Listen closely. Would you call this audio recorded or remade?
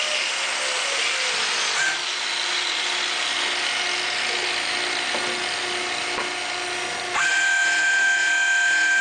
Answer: recorded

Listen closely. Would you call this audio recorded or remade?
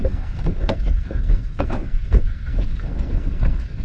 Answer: remade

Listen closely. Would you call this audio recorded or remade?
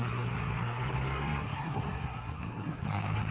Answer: remade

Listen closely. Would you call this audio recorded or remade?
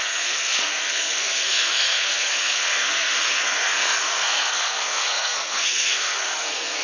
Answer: remade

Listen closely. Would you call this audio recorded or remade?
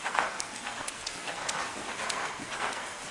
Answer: remade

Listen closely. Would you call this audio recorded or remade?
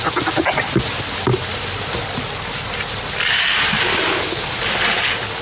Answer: recorded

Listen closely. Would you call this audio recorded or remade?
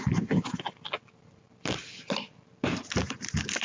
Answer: recorded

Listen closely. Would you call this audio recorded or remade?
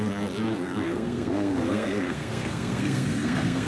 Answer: remade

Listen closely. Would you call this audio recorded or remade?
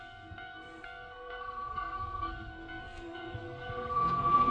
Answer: remade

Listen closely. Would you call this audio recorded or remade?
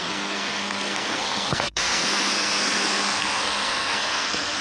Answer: remade